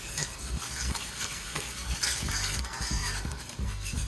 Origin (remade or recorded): remade